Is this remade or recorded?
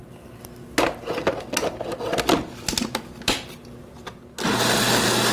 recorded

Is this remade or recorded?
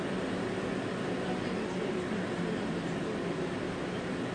recorded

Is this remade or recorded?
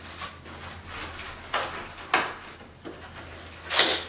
recorded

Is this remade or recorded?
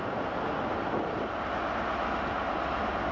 recorded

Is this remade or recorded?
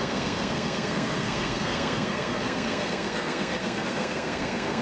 remade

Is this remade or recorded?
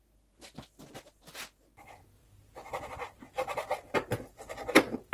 recorded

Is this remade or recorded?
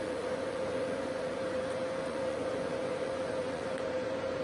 remade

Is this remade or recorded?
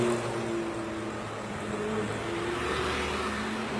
recorded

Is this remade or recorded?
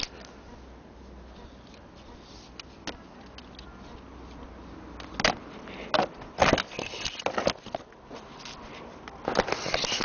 recorded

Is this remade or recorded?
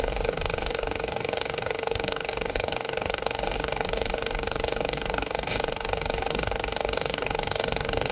remade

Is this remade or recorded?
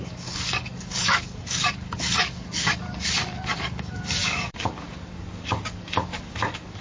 remade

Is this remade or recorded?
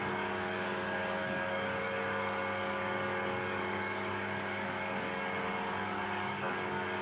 remade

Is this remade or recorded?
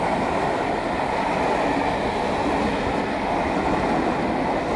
recorded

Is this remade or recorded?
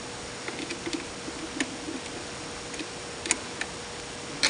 recorded